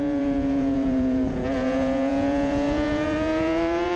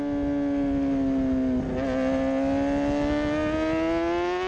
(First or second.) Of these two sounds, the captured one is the second